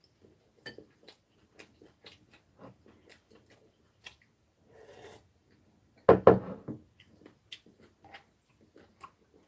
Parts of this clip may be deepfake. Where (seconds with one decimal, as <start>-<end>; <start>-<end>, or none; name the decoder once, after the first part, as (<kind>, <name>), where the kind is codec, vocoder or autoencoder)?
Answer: none